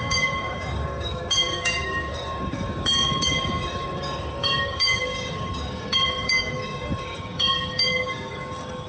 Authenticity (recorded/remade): remade